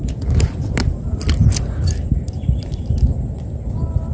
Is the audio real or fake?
real